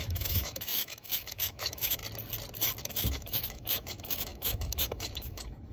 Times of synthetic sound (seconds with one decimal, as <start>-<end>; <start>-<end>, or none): 0.0-2.0; 2.8-5.7